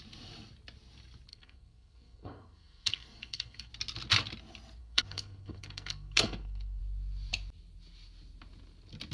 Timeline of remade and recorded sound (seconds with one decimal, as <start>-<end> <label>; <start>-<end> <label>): 0.0-1.3 recorded; 1.3-3.7 remade; 3.7-4.8 recorded; 4.8-6.8 remade; 6.8-9.1 recorded